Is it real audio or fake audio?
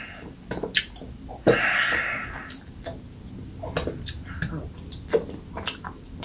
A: real